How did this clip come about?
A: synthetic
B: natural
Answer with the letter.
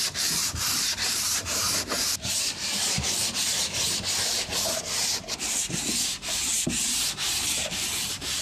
A